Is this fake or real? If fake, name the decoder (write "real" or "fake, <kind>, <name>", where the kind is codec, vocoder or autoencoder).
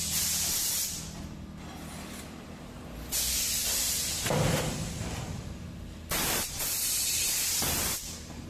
fake, vocoder, BigVGAN v2